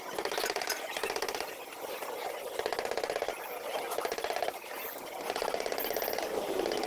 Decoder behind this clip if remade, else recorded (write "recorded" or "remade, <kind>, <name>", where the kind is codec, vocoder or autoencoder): recorded